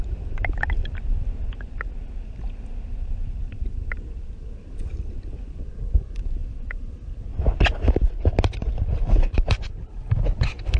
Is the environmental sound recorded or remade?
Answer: recorded